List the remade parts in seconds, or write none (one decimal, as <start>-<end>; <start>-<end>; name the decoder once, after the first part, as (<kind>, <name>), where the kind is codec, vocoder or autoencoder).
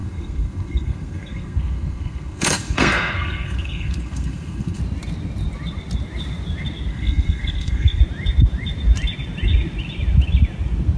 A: 0.0-4.8 (codec, SNAC); 6.9-8.0